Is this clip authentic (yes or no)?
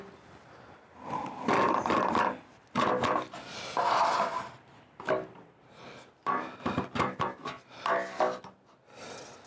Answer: yes